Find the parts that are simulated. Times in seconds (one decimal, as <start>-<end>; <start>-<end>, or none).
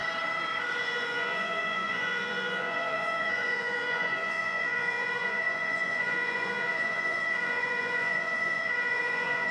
0.8-9.5